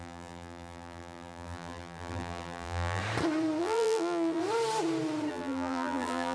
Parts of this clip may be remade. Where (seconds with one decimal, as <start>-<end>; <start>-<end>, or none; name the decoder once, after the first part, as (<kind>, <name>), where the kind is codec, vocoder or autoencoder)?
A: 0.0-3.0 (vocoder, BigVGAN v2); 3.6-4.4; 5.3-6.3